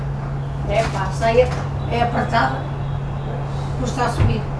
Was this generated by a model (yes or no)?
no